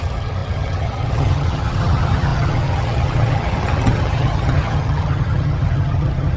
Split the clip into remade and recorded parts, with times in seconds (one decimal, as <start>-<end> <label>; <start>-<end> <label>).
0.0-6.4 remade